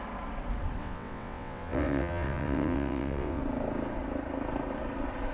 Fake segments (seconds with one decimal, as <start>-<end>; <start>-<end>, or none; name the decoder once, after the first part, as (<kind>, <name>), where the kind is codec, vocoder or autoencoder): 0.8-3.4 (vocoder, WaveNeXt)